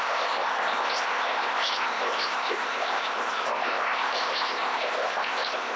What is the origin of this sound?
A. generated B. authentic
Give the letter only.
A